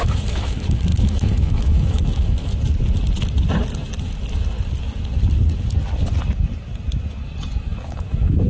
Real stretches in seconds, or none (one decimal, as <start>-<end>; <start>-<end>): 2.5-7.6